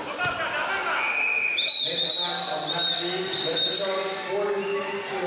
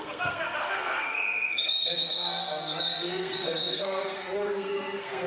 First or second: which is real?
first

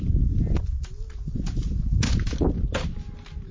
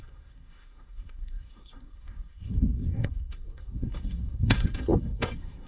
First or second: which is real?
first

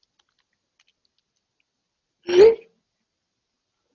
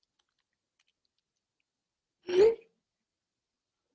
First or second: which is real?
first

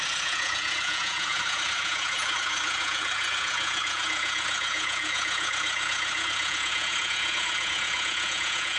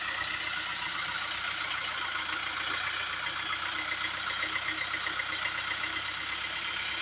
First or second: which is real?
second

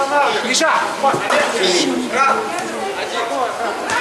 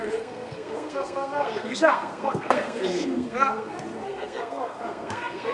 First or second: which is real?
first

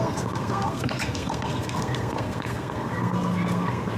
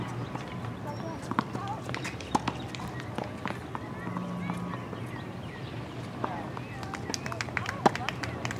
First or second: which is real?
second